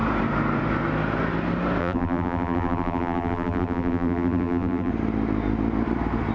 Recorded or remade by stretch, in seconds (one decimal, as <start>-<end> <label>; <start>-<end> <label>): 0.0-1.8 recorded; 1.8-4.9 remade; 4.9-6.3 recorded